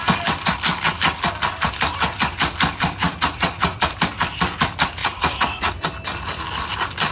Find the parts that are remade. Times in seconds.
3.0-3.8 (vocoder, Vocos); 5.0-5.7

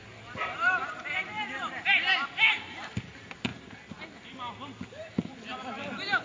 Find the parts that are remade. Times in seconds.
0.0-3.5 (vocoder, BigVGAN v2)

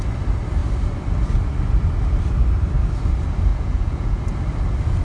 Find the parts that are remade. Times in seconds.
3.5-4.2 (vocoder, Vocos)

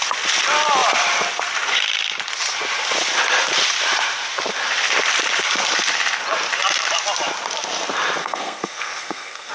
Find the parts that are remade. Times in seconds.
8.2-9.5 (codec, SNAC)

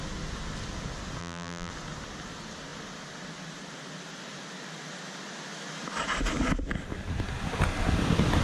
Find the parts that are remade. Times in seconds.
1.2-1.7 (vocoder, BigVGAN v2)

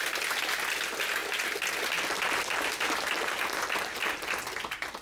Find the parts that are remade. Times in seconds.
none

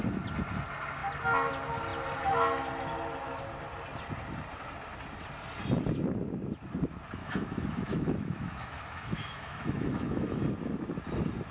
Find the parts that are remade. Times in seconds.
7.2-10.5 (autoencoder, DAC-VAE)

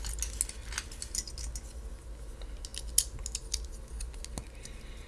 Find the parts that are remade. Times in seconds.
none